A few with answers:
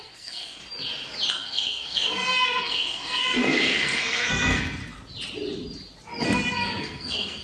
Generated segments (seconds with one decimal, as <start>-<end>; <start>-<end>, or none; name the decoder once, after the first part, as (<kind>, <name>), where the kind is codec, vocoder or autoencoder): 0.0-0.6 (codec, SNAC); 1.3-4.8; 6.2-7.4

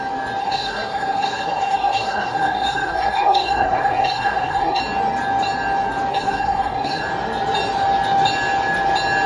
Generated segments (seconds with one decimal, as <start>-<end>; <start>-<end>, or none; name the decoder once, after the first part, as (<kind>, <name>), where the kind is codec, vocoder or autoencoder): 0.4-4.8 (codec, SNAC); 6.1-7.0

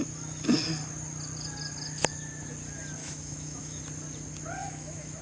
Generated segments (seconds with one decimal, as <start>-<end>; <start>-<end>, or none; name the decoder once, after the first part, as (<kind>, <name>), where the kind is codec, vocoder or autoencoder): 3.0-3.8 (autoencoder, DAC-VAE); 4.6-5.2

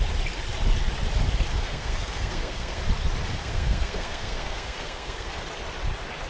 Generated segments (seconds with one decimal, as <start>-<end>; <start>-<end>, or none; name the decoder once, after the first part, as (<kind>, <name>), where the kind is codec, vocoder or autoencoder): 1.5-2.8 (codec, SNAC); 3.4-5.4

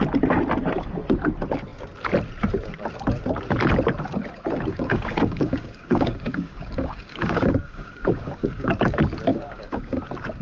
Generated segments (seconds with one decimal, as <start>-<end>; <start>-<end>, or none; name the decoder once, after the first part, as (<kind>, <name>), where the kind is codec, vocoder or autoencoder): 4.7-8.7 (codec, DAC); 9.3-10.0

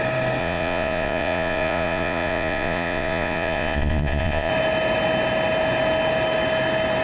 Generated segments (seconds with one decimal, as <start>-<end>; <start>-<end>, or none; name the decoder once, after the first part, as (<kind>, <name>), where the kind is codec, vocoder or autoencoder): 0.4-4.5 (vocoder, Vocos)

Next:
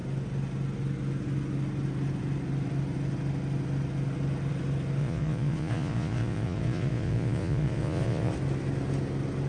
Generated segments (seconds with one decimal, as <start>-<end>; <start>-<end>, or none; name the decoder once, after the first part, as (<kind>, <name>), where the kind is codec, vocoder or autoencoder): 5.0-8.3 (vocoder, Vocos)

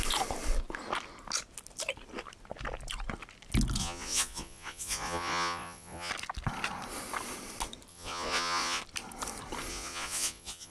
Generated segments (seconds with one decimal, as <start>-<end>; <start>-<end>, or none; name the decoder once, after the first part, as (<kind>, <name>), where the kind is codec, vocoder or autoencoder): 3.8-6.1 (vocoder, Vocos); 7.9-8.8; 9.7-10.7